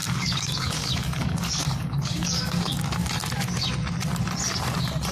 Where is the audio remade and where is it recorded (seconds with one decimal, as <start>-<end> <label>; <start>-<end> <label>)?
0.0-3.1 remade; 3.1-5.1 recorded